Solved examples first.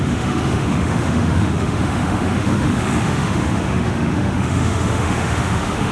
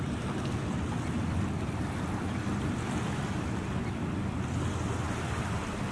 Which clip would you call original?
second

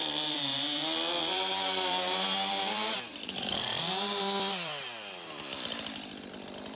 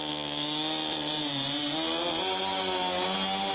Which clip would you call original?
second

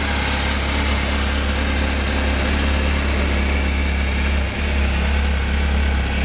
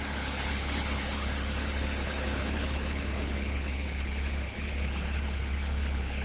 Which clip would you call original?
first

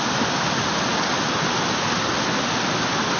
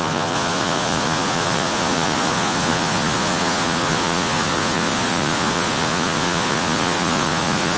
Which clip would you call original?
first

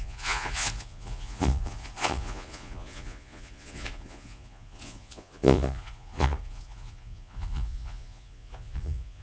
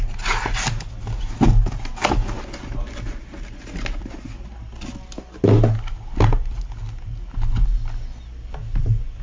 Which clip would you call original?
second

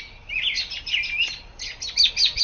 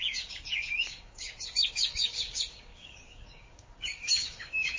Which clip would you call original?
first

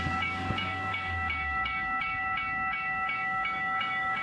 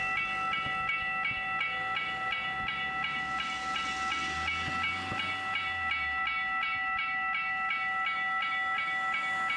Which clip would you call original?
second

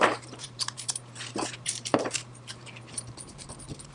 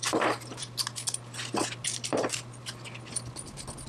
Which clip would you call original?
second